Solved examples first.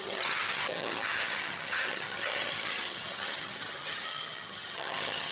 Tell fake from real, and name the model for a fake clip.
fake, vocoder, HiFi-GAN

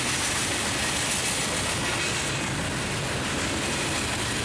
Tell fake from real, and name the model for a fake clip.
real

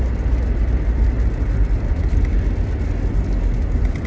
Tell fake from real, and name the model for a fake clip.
real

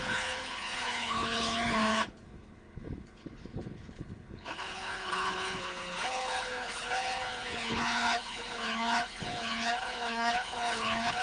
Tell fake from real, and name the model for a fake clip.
fake, codec, HILCodec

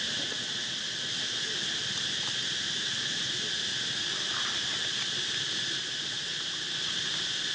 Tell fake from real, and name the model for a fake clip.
real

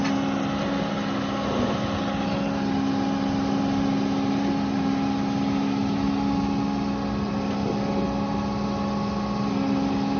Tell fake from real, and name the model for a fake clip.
real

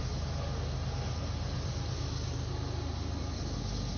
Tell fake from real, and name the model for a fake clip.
real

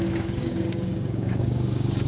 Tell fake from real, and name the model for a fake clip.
fake, codec, DAC